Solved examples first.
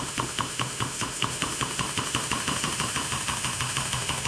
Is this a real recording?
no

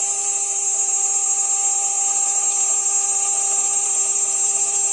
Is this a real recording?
no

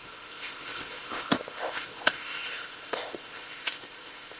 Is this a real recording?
no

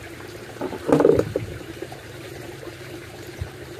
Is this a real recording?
no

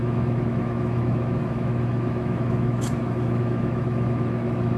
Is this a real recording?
no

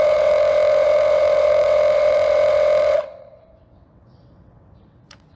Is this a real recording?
no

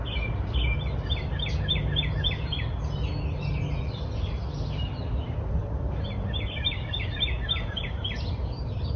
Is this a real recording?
yes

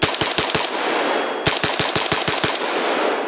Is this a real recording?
yes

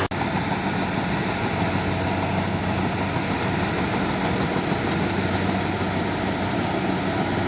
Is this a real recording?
yes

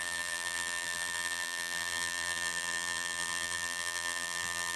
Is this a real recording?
no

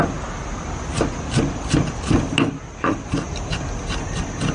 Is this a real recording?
yes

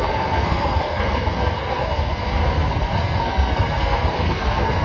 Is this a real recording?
no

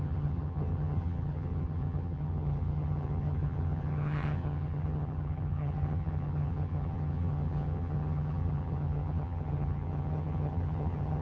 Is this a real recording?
no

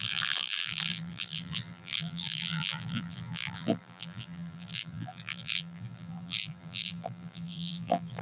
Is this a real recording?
no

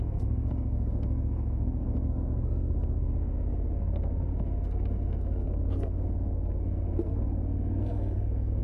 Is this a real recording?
no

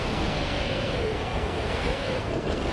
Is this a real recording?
no